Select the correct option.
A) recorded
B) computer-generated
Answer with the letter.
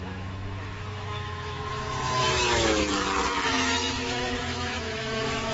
B